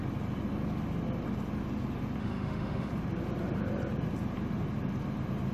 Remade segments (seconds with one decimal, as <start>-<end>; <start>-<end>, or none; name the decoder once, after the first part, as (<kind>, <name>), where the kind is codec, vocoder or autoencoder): 2.2-2.9 (autoencoder, DAC-VAE)